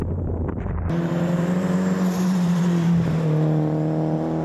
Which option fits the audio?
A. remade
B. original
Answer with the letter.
A